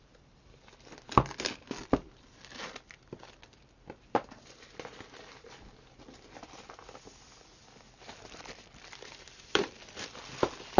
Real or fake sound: fake